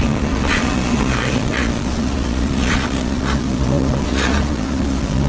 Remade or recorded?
remade